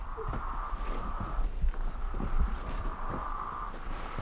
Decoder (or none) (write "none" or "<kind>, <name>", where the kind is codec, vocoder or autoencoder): vocoder, BigVGAN v2